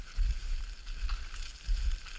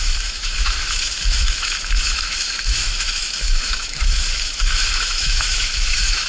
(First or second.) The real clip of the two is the first